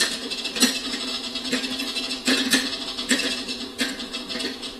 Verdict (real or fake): fake